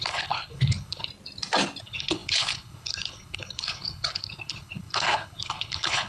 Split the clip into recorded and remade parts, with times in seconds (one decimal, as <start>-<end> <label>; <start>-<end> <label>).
0.0-1.1 remade; 1.1-1.8 recorded; 1.8-6.1 remade

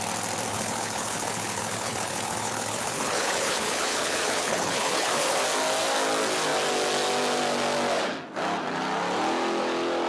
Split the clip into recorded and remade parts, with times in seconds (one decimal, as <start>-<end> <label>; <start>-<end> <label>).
0.0-0.5 recorded; 0.5-5.4 remade; 5.4-10.1 recorded

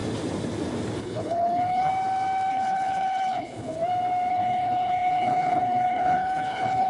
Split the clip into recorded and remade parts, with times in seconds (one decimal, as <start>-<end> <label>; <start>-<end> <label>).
0.0-1.0 recorded; 1.0-1.9 remade; 1.9-2.5 recorded; 2.5-3.8 remade; 3.8-4.3 recorded; 4.3-6.9 remade

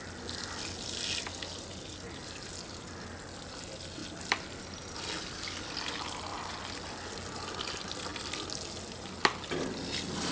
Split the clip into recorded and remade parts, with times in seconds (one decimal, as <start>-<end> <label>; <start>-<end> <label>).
0.0-10.3 recorded

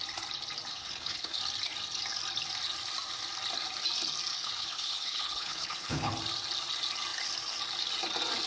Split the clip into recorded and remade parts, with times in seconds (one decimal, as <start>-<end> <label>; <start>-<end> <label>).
0.0-0.7 recorded; 0.7-1.4 remade; 1.4-4.3 recorded; 4.3-6.1 remade; 6.1-8.5 recorded

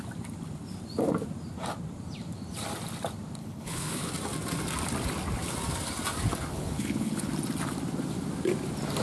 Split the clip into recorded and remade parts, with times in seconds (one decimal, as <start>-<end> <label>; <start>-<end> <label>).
0.0-3.4 recorded; 3.4-4.1 remade; 4.1-6.5 recorded; 6.5-7.3 remade; 7.3-9.0 recorded

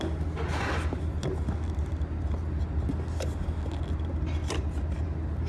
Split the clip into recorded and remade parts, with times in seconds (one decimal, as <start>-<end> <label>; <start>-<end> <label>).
0.0-5.5 recorded

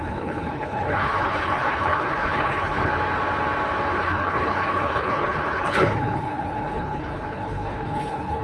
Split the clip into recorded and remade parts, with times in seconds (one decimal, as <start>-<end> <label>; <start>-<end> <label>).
0.0-2.9 remade; 2.9-4.0 recorded; 4.0-8.4 remade